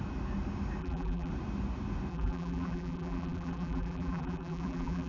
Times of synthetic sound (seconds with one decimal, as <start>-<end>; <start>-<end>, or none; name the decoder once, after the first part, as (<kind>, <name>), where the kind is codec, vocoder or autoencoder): 0.8-1.3 (vocoder, BigVGAN v2); 2.1-5.1